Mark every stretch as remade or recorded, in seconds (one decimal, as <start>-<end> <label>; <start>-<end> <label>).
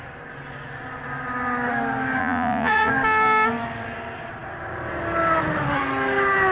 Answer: 0.0-2.2 recorded; 2.2-2.9 remade; 2.9-6.5 recorded